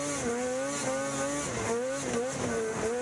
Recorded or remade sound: recorded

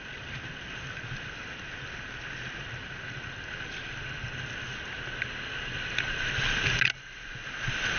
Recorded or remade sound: recorded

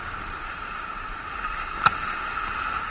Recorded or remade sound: recorded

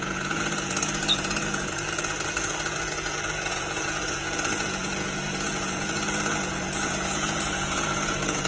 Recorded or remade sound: remade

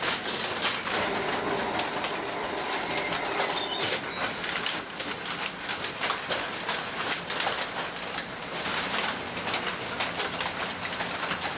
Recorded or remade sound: recorded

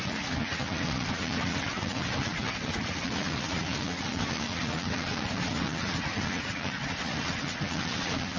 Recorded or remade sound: remade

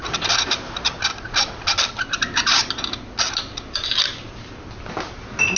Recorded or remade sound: recorded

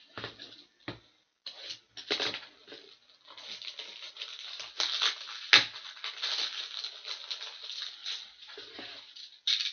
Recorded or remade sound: recorded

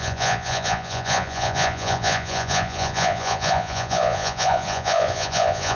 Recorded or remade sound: remade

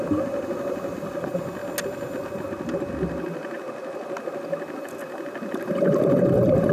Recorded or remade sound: recorded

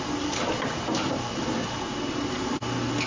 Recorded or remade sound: recorded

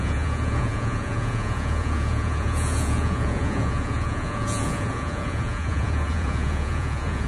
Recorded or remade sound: remade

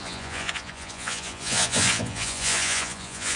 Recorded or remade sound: remade